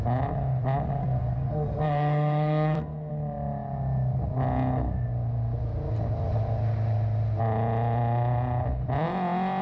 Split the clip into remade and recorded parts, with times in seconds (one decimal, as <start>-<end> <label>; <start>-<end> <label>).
0.0-1.0 recorded; 1.0-3.1 remade; 3.1-9.6 recorded

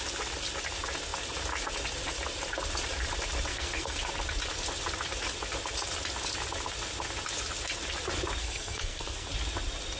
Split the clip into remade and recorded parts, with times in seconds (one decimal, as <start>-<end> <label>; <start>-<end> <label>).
0.0-3.5 recorded; 3.5-4.0 remade; 4.0-8.4 recorded; 8.4-9.3 remade; 9.3-10.0 recorded

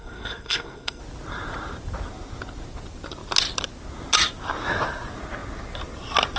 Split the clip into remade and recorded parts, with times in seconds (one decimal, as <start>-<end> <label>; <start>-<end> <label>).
0.0-1.0 remade; 1.0-6.4 recorded

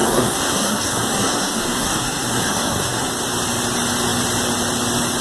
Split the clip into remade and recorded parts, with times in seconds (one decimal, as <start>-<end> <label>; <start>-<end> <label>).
0.0-3.1 remade; 3.1-5.2 recorded